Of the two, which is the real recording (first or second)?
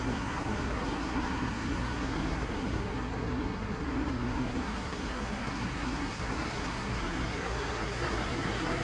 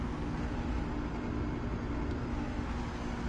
second